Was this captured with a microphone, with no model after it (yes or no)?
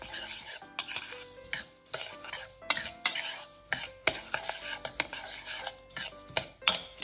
yes